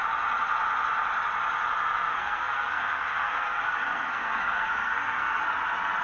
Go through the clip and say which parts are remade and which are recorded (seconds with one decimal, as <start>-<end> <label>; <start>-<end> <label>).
0.0-2.1 recorded; 2.1-5.4 remade; 5.4-6.0 recorded